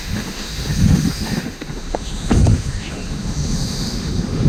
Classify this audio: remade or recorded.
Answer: remade